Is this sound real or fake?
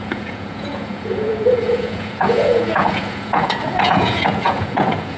fake